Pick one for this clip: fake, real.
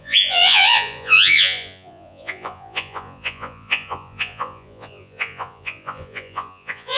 fake